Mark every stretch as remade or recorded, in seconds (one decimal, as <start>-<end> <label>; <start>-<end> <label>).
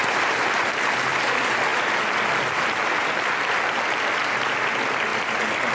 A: 0.0-5.7 recorded